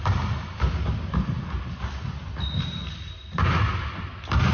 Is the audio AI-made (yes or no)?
no